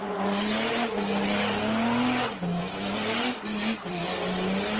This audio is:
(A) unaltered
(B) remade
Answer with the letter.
A